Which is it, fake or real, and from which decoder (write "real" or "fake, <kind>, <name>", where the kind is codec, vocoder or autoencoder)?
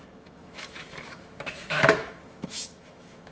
fake, autoencoder, DAC-VAE